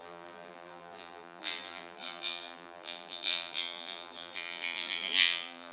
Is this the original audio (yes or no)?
no